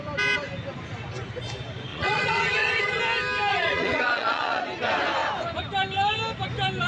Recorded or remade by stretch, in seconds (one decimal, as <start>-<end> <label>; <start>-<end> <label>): 0.0-1.9 recorded; 1.9-3.0 remade; 3.0-3.5 recorded; 3.5-4.6 remade; 4.6-6.9 recorded